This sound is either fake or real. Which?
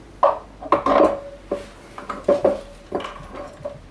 real